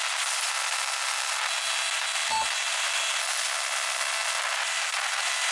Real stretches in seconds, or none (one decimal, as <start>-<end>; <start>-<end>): 0.0-5.5